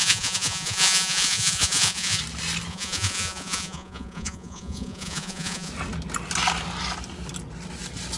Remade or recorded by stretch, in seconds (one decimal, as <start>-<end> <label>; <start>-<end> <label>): 0.0-2.2 remade; 2.2-2.7 recorded; 2.7-5.7 remade; 5.7-8.2 recorded